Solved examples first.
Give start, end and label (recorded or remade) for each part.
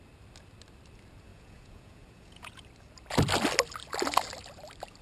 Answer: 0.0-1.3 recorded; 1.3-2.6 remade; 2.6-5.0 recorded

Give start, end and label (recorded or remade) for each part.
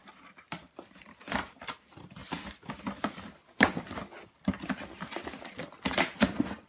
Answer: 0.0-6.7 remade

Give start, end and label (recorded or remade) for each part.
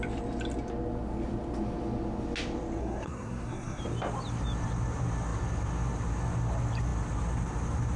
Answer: 0.0-2.8 recorded; 2.8-3.8 remade; 3.8-8.0 recorded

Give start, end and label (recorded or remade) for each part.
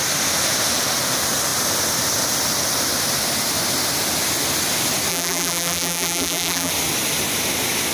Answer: 0.0-5.1 recorded; 5.1-6.7 remade; 6.7-7.9 recorded